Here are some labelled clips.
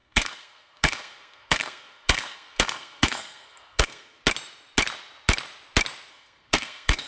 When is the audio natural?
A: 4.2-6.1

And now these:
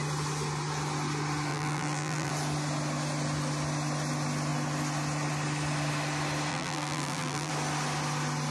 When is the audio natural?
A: 0.0-1.5; 2.3-6.5; 7.5-8.5

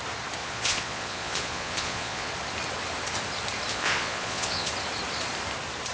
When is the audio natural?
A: 0.0-0.4; 2.3-3.7; 4.7-5.9

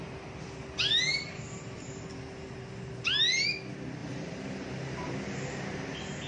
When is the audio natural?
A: 0.0-1.1; 2.0-4.0; 5.1-6.3

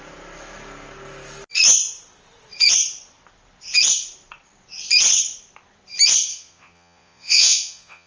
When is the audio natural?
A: 0.0-6.3

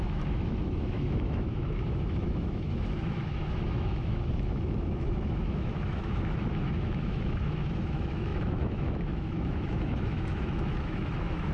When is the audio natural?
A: none